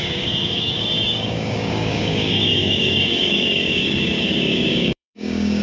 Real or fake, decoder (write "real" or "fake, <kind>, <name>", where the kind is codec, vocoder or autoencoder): fake, codec, DAC